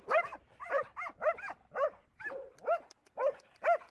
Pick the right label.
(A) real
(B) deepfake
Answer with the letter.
A